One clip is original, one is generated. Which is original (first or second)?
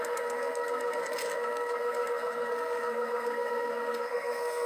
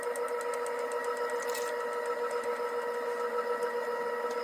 second